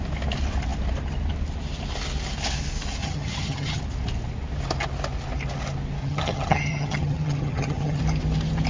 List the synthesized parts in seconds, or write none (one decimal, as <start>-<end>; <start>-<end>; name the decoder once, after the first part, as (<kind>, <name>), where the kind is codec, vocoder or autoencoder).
3.0-3.8 (vocoder, HiFi-GAN); 6.0-8.0

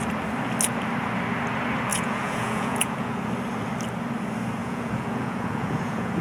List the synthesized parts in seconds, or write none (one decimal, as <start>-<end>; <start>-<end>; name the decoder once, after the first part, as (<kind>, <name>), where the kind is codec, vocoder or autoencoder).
1.9-3.2 (vocoder, Vocos); 4.6-6.2

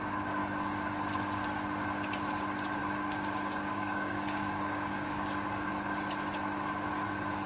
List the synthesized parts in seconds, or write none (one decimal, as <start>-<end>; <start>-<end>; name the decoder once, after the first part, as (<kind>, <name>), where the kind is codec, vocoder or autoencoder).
2.8-5.7 (codec, DAC)

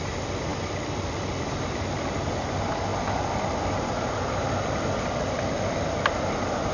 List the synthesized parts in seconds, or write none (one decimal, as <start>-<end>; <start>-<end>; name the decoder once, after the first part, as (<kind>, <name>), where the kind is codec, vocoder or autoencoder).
none

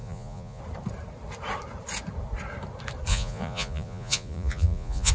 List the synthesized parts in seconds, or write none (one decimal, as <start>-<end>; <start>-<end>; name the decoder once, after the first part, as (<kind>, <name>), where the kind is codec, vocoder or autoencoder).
0.0-0.6 (vocoder, Vocos); 3.1-5.1

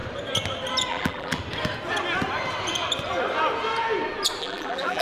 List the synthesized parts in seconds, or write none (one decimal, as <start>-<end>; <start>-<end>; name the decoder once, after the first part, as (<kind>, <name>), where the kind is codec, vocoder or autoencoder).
0.9-1.4 (vocoder, BigVGAN v2); 4.4-5.0

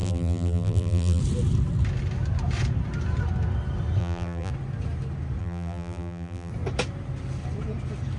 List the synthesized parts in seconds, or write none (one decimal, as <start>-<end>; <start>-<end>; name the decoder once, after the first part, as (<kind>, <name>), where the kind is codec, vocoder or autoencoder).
0.0-1.2 (vocoder, BigVGAN v2); 4.0-4.5; 5.4-6.5